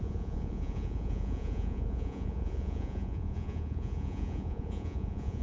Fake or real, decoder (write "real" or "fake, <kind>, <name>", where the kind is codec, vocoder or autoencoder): fake, vocoder, Vocos